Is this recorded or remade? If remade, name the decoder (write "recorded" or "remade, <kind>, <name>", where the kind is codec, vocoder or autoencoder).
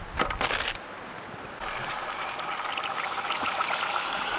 recorded